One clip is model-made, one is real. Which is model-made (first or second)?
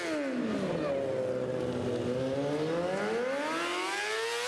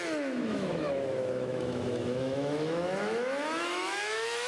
second